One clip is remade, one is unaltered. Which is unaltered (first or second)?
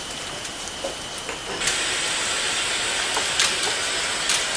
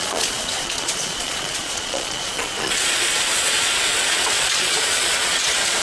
first